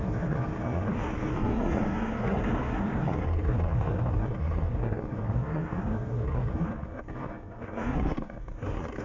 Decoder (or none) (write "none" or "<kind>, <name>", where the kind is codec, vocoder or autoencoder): codec, SNAC